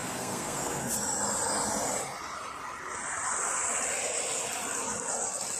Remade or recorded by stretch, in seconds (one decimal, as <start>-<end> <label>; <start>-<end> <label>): 0.0-0.9 remade; 0.9-5.6 recorded